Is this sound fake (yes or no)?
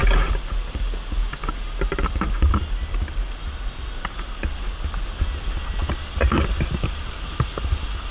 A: no